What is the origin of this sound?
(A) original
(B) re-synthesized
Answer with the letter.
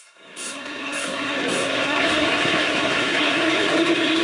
B